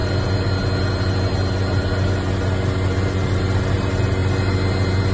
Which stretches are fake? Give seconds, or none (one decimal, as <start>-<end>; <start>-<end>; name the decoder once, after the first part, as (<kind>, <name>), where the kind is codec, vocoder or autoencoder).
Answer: 3.1-4.2 (vocoder, BigVGAN v2)